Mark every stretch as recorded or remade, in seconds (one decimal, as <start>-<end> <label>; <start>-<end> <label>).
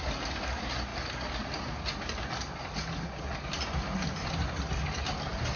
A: 0.0-5.6 recorded